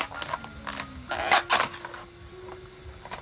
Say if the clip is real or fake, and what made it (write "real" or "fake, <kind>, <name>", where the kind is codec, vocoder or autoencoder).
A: real